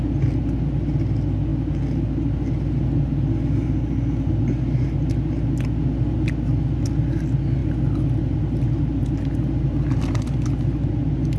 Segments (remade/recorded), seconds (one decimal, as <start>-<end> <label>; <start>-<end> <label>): 0.0-11.4 recorded